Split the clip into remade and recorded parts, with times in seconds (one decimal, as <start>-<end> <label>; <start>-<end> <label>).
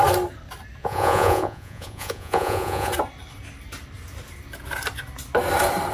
0.0-0.8 recorded; 0.8-2.9 remade; 2.9-5.9 recorded